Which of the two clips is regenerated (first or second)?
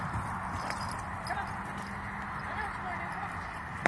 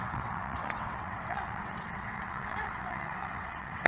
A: second